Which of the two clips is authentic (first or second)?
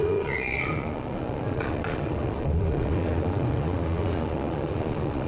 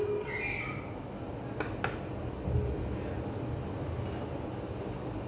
second